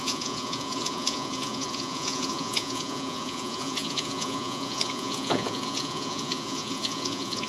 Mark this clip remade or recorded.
remade